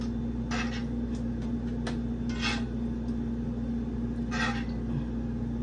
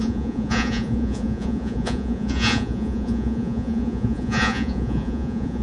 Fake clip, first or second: second